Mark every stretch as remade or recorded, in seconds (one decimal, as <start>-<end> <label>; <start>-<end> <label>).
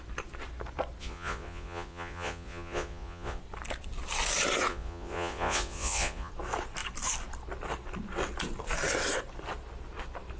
0.0-1.0 recorded; 1.0-3.4 remade; 3.4-4.7 recorded; 4.7-6.3 remade; 6.3-10.4 recorded